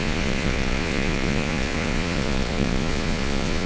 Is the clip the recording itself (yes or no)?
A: no